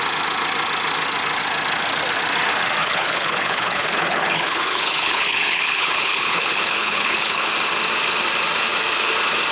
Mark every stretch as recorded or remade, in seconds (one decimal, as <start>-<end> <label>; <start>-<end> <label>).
0.0-2.8 recorded; 2.8-7.5 remade; 7.5-9.5 recorded